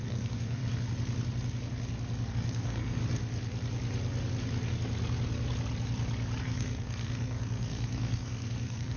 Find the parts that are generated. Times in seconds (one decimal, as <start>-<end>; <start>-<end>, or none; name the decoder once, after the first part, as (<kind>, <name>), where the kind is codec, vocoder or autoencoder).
0.0-0.6 (codec, SNAC); 2.3-3.0; 6.4-9.0